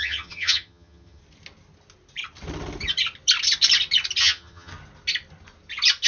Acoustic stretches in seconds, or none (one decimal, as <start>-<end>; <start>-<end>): 1.2-4.2; 4.7-6.1